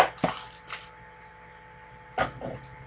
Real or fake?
real